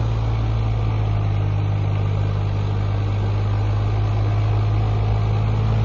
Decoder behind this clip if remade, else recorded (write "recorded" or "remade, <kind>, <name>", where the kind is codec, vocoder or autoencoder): recorded